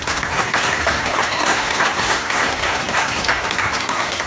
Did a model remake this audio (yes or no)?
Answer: yes